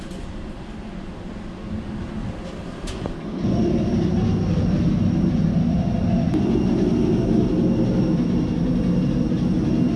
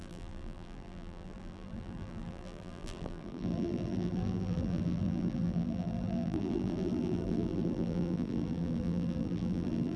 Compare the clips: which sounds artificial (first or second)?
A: second